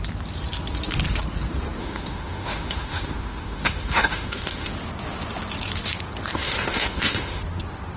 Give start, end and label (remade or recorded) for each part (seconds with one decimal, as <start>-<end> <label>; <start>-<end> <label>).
0.0-1.8 recorded; 1.8-4.7 remade; 4.7-6.3 recorded; 6.3-7.4 remade; 7.4-8.0 recorded

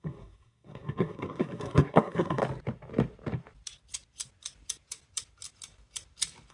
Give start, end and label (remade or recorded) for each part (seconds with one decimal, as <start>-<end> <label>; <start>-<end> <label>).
0.0-2.4 remade; 2.4-6.5 recorded

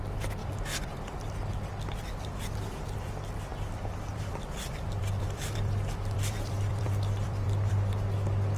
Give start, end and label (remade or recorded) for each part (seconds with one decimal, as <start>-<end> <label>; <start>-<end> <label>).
0.0-0.4 recorded; 0.4-0.9 remade; 0.9-3.5 recorded; 3.5-7.9 remade; 7.9-8.6 recorded

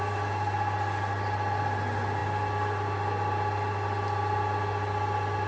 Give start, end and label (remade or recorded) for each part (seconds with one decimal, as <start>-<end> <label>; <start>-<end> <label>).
0.0-5.5 recorded

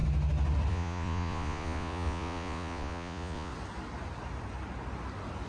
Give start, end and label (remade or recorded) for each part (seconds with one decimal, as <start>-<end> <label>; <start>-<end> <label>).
0.0-0.7 recorded; 0.7-3.5 remade; 3.5-5.5 recorded

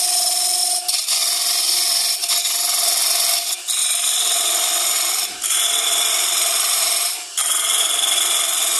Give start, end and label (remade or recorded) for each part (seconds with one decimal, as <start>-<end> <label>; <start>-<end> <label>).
0.0-3.8 recorded; 3.8-7.8 remade; 7.8-8.8 recorded

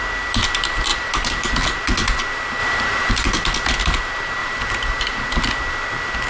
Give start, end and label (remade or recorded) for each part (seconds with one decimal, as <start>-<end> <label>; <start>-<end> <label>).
0.0-0.9 recorded; 0.9-1.5 remade; 1.5-2.6 recorded; 2.6-3.1 remade; 3.1-4.4 recorded; 4.4-5.2 remade; 5.2-6.3 recorded

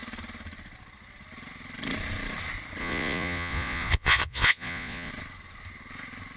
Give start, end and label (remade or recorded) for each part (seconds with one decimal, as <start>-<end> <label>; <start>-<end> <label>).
0.0-2.8 recorded; 2.8-5.1 remade; 5.1-6.4 recorded